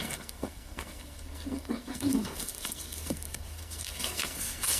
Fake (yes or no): yes